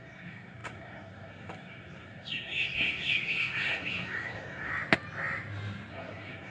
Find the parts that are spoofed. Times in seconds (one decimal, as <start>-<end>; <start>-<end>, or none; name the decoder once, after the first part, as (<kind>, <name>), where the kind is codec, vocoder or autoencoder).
0.0-4.7 (codec, SNAC); 5.9-6.5

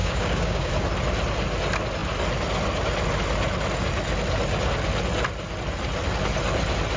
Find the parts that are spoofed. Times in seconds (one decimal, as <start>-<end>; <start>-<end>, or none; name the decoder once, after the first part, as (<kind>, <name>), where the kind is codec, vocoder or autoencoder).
0.0-0.7 (codec, DAC)

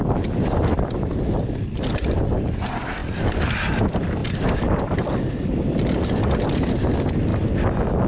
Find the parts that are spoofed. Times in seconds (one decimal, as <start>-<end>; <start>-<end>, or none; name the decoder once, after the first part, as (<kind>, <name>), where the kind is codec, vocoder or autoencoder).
3.0-3.8 (vocoder, BigVGAN v2); 4.2-6.6

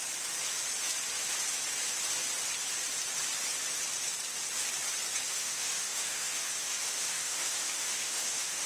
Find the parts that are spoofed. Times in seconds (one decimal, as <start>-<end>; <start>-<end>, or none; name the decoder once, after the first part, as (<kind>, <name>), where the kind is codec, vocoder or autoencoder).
5.3-8.7 (autoencoder, DAC-VAE)